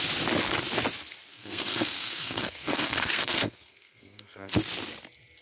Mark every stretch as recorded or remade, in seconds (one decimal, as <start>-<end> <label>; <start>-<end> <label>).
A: 0.0-1.3 recorded; 1.3-4.5 remade; 4.5-5.4 recorded